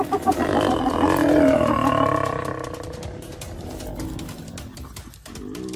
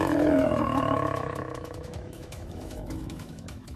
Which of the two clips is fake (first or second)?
second